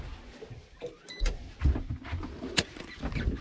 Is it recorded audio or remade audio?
recorded